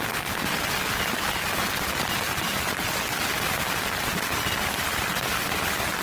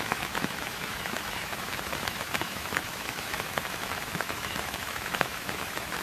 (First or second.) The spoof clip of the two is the second